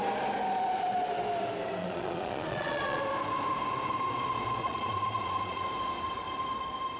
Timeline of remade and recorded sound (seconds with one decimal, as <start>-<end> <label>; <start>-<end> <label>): 0.0-1.8 recorded; 1.8-3.0 remade; 3.0-4.6 recorded; 4.6-5.6 remade; 5.6-7.0 recorded